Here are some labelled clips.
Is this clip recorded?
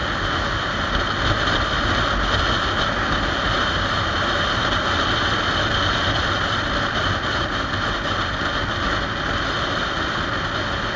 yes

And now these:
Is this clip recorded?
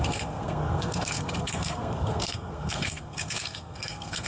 no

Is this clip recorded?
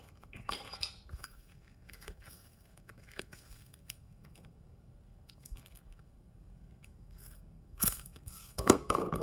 no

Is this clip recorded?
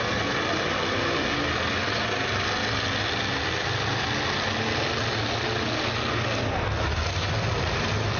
yes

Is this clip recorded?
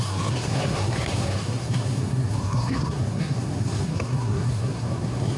no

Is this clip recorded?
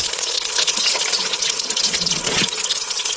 no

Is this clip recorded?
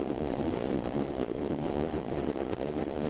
no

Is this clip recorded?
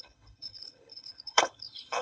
no